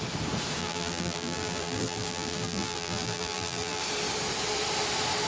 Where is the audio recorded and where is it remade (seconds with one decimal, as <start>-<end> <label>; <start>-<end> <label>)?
0.0-0.6 recorded; 0.6-3.8 remade; 3.8-5.3 recorded